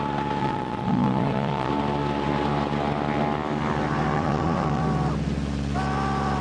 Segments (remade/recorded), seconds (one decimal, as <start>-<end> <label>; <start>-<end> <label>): 0.0-0.4 recorded; 0.4-1.7 remade; 1.7-4.1 recorded; 4.1-4.8 remade; 4.8-6.4 recorded